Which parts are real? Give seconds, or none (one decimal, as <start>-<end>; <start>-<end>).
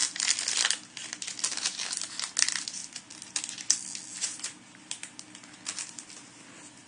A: 0.0-6.9